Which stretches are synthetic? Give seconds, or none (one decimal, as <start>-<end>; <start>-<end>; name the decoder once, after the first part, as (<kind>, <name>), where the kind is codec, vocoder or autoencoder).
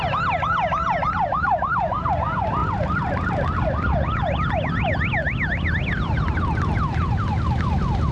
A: 0.8-1.7 (vocoder, BigVGAN v2)